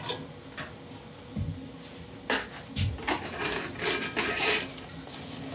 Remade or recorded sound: recorded